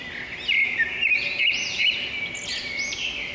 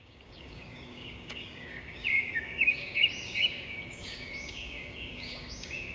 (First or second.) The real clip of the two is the first